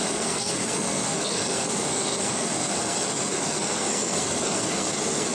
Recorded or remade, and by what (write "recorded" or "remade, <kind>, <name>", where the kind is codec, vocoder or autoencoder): remade, codec, SNAC